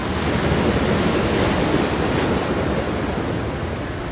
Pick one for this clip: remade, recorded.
recorded